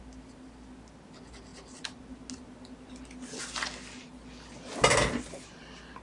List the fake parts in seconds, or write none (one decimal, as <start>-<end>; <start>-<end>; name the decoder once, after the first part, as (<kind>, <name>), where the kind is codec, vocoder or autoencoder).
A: none